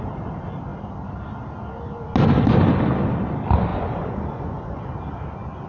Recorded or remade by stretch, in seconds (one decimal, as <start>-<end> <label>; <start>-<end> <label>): 0.0-3.7 recorded; 3.7-4.8 remade; 4.8-5.7 recorded